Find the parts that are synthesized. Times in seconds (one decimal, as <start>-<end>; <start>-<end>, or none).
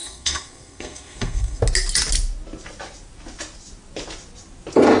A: 0.0-1.6